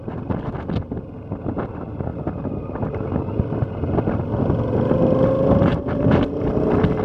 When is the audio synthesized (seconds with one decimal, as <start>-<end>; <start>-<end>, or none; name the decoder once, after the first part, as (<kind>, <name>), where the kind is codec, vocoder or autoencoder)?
5.7-6.5 (vocoder, BigVGAN v2)